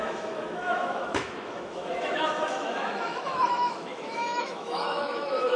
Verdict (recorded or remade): remade